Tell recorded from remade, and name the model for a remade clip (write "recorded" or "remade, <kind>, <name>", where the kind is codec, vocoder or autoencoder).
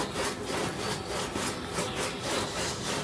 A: recorded